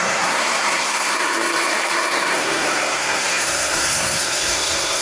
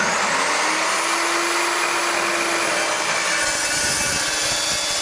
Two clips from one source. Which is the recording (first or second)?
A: second